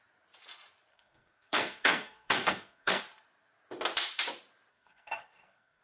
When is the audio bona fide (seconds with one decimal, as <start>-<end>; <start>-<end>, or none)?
0.0-0.9; 3.0-4.7